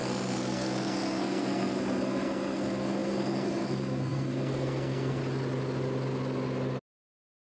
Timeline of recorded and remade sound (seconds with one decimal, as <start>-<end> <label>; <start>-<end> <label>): 0.0-5.2 remade; 5.2-6.8 recorded; 6.8-7.6 remade